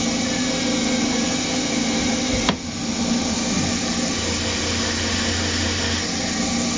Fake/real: real